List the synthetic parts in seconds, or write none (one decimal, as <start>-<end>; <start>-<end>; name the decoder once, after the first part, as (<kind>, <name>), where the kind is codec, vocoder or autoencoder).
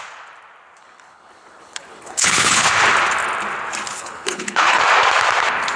0.8-2.7 (codec, HILCodec); 3.9-4.8